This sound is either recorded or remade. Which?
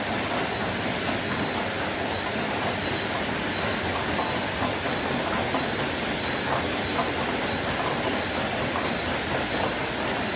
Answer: recorded